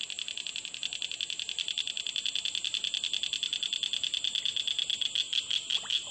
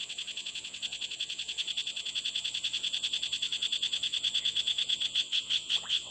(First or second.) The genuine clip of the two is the first